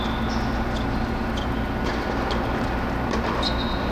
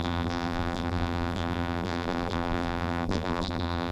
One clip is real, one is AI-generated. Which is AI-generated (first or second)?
second